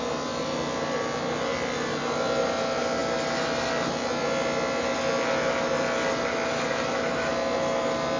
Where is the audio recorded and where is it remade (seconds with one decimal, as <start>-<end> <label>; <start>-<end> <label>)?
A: 0.0-8.2 recorded